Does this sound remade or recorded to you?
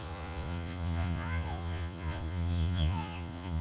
remade